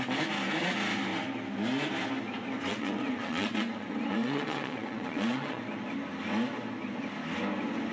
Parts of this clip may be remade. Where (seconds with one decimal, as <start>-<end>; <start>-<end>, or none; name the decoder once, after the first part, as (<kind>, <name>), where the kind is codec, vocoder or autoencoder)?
2.7-5.6 (vocoder, WaveNeXt)